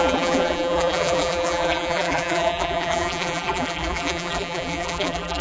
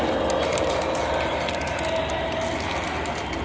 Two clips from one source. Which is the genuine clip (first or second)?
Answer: second